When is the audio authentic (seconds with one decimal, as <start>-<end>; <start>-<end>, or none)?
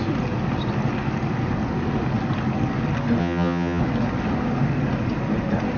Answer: 0.0-3.2; 3.8-5.8